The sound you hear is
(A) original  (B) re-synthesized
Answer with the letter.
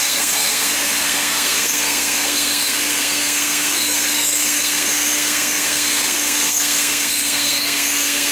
B